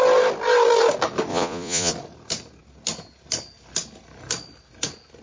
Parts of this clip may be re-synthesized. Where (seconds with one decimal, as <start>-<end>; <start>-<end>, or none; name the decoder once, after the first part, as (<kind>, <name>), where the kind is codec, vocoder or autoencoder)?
1.3-1.9 (vocoder, Vocos)